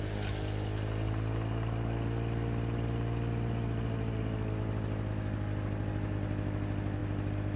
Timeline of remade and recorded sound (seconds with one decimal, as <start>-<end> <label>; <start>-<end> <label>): 0.0-7.6 recorded